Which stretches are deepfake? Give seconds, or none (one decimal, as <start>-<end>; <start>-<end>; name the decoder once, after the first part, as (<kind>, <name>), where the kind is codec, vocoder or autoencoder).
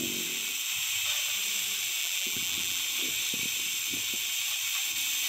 2.0-2.8 (vocoder, BigVGAN v2)